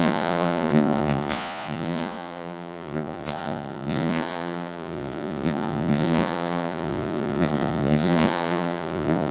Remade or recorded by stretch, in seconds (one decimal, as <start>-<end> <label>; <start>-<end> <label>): 0.0-9.3 remade